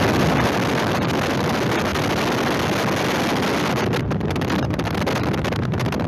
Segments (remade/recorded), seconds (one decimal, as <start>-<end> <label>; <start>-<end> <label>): 0.0-6.1 recorded